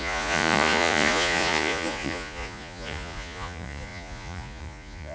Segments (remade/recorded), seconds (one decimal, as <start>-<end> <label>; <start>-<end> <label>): 0.0-5.1 remade